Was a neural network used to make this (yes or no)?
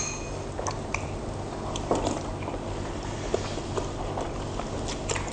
no